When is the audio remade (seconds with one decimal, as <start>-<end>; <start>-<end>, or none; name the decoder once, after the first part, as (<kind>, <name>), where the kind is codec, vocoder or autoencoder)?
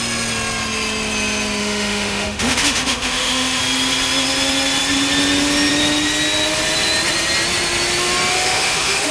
1.6-3.6 (autoencoder, DAC-VAE); 8.3-9.1